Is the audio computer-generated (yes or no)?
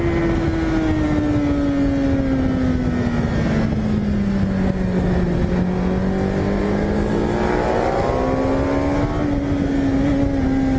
no